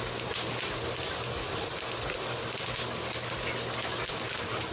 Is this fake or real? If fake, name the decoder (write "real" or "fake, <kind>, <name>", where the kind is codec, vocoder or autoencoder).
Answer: real